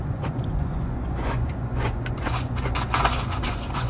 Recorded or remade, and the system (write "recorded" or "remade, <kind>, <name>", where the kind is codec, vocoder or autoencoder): remade, vocoder, Vocos